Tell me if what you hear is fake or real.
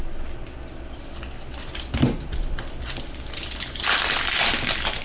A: real